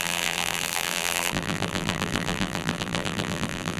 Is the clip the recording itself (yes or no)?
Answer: no